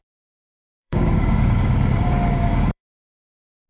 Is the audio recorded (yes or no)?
no